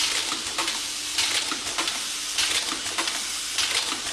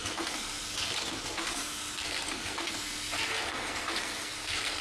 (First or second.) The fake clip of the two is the second